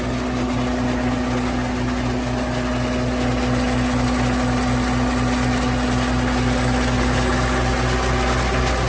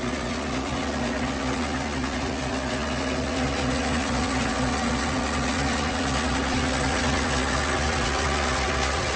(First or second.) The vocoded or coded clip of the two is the second